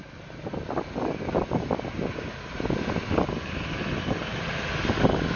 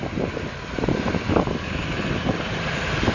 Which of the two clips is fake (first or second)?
second